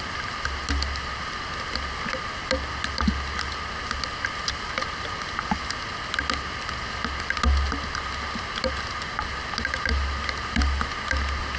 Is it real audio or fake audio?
real